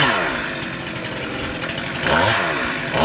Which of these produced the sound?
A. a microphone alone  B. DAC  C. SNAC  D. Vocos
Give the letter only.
A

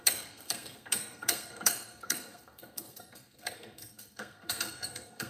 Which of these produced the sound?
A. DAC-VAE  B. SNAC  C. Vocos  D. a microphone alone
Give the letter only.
B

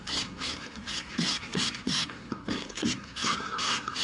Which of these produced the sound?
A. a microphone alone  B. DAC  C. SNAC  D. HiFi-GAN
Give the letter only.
C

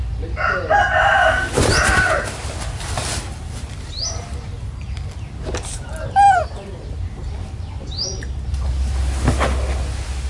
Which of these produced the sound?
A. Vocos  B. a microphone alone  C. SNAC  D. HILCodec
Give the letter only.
B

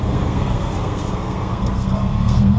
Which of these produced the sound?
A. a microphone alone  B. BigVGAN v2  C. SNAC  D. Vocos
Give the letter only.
C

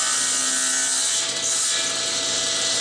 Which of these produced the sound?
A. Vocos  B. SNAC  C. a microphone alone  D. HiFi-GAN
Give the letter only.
C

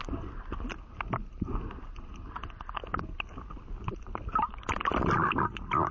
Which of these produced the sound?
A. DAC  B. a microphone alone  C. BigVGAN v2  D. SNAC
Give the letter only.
B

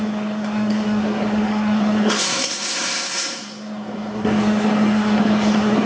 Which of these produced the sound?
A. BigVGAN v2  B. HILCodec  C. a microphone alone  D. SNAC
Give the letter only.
D